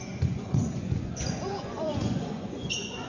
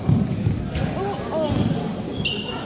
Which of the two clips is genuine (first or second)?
second